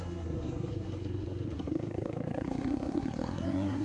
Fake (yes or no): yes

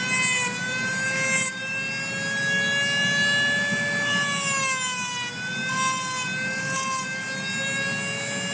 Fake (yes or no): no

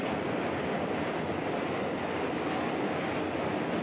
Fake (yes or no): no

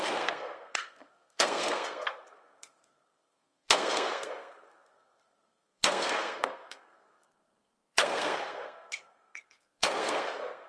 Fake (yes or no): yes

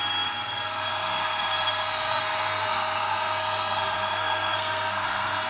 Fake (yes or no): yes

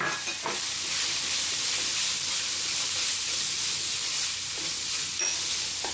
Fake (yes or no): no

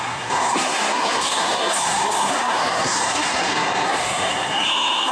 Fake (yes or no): yes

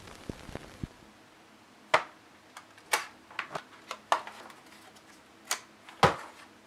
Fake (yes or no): no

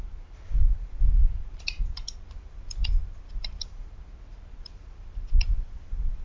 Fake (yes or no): no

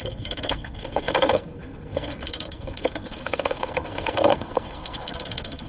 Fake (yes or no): yes